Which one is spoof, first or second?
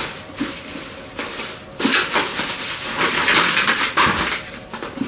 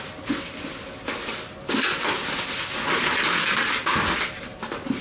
first